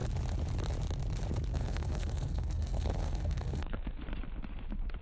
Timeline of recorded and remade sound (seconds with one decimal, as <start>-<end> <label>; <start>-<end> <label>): 0.0-1.5 recorded; 1.5-4.0 remade; 4.0-5.0 recorded